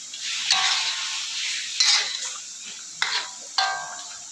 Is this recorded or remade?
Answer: recorded